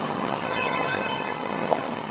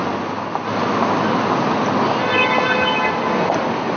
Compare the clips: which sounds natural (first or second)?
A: second